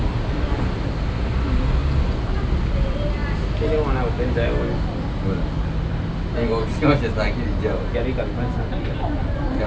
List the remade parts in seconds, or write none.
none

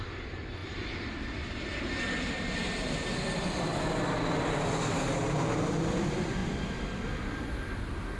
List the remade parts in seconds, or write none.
none